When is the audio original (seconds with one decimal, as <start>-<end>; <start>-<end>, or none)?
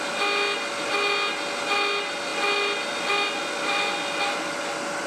0.0-5.1